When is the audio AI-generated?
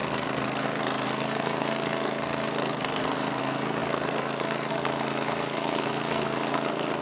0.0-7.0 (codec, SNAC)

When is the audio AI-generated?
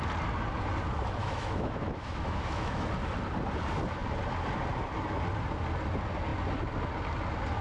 1.2-2.9 (autoencoder, DAC-VAE)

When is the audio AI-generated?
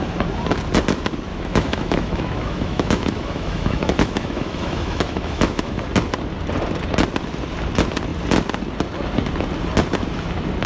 1.3-5.8 (autoencoder, DAC-VAE)